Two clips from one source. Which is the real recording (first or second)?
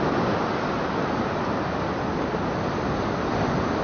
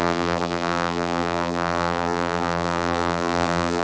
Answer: first